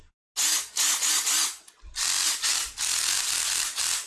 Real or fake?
real